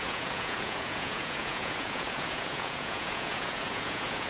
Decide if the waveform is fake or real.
fake